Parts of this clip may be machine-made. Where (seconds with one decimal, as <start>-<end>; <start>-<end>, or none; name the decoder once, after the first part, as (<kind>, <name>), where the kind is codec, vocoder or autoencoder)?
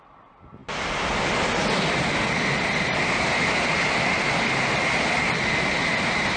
none